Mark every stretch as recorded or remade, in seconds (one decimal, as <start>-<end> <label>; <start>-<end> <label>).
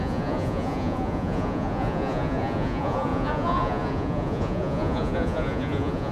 0.0-6.1 remade